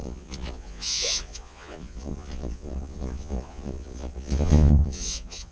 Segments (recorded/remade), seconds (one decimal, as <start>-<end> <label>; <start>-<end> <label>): 0.0-5.5 remade